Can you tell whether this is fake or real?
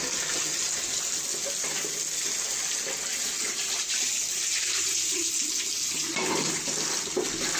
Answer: real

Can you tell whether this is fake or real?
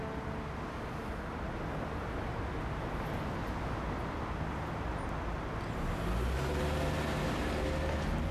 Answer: real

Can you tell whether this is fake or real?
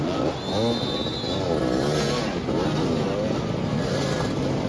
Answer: real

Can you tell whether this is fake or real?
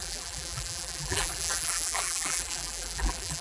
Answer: fake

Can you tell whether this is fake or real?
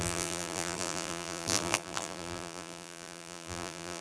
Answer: fake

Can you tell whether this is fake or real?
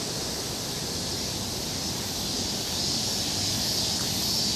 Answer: real